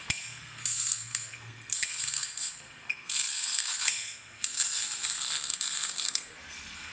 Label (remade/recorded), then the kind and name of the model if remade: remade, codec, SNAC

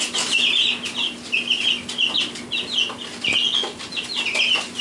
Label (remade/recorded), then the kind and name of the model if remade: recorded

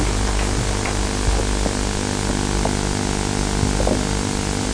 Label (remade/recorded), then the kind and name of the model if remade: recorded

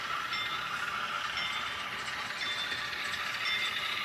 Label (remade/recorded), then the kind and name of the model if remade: recorded